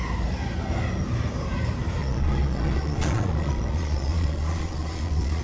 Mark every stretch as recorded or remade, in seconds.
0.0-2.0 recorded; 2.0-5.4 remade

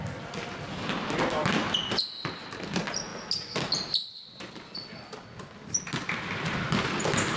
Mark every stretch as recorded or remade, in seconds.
0.0-7.4 recorded

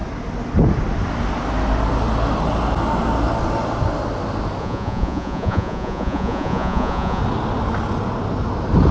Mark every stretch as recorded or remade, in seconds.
0.0-4.6 recorded; 4.6-7.2 remade; 7.2-8.9 recorded